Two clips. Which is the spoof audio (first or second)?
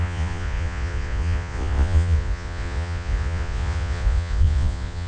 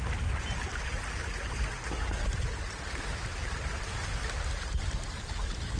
first